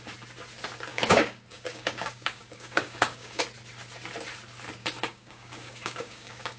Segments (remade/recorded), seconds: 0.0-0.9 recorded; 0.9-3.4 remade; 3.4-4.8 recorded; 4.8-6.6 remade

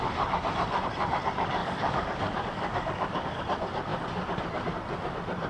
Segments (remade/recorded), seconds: 0.0-1.6 recorded; 1.6-3.4 remade; 3.4-5.5 recorded

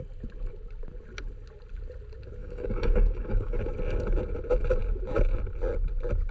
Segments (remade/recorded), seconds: 0.0-2.4 recorded; 2.4-3.6 remade; 3.6-6.3 recorded

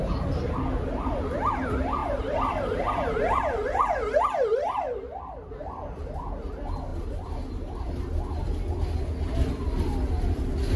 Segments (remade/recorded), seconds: 0.0-10.8 recorded

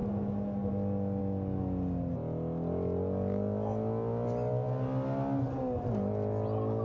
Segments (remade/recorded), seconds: 0.0-6.8 recorded